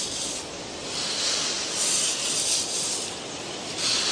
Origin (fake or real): fake